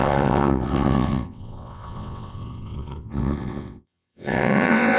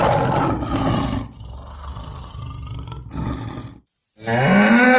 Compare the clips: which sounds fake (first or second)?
first